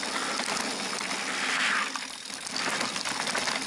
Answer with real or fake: real